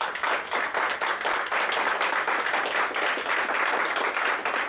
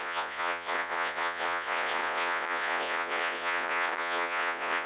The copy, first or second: second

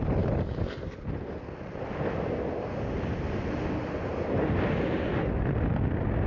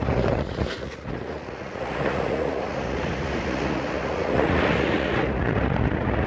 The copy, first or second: second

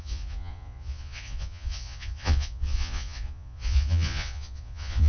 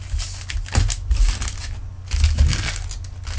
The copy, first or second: first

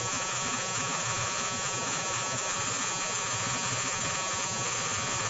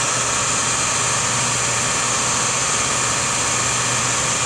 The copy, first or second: first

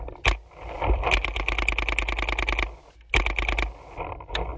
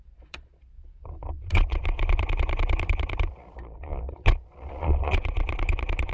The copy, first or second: second